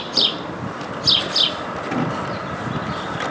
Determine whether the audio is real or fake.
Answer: real